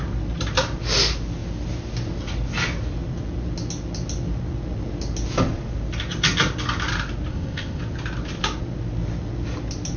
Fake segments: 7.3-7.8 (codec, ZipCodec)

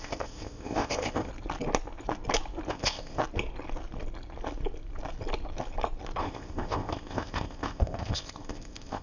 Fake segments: 0.0-1.3 (codec, ZipCodec); 2.7-3.2; 6.2-9.0

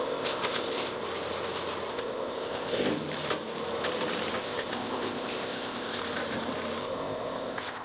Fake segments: 0.0-1.0 (codec, ZipCodec); 1.9-2.9; 4.4-6.0; 6.8-7.8

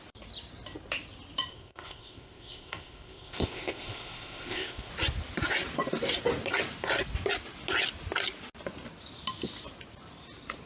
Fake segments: 1.5-4.9 (codec, ZipCodec)

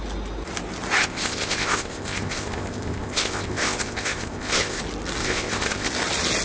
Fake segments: 1.0-4.8 (codec, ZipCodec); 5.2-5.9